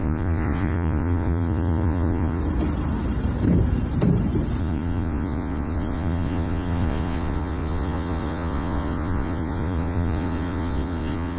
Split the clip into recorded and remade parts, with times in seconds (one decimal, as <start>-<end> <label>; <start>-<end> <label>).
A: 0.0-2.4 remade; 2.4-4.6 recorded; 4.6-11.4 remade